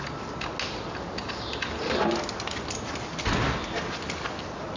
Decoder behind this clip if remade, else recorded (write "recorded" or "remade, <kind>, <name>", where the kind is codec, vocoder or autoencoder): recorded